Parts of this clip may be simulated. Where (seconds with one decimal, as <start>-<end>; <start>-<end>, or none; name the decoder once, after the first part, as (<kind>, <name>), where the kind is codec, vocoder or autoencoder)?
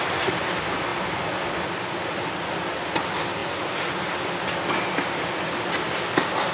none